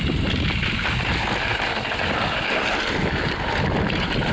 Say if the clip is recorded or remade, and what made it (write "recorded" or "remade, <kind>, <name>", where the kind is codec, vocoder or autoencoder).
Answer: recorded